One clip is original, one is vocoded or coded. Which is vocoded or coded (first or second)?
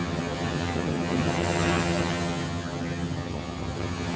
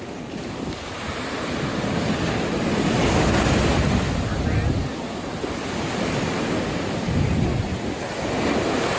first